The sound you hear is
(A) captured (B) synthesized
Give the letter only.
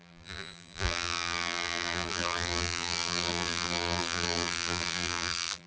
B